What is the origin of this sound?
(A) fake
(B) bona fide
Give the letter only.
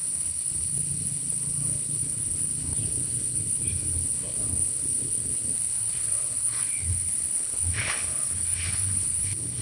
A